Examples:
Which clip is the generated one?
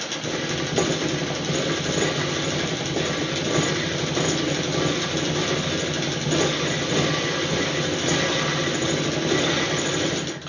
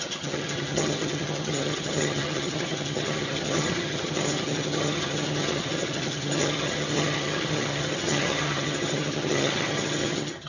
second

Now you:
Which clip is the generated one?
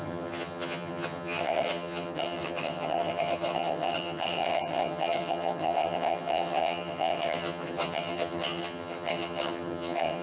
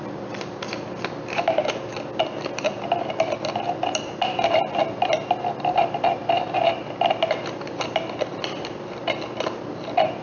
first